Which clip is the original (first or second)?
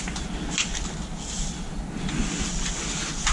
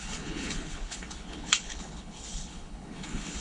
first